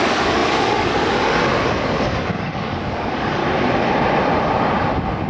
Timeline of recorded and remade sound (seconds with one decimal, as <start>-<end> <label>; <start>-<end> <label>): 0.0-3.4 remade; 3.4-5.3 recorded